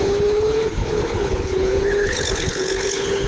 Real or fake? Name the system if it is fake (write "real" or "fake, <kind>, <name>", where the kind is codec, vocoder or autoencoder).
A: fake, codec, HILCodec